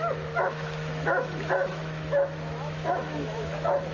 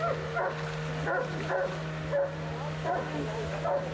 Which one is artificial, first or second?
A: first